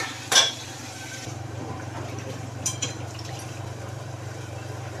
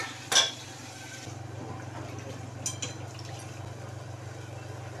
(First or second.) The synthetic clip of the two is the first